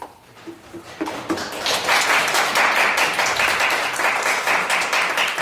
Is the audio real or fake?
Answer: real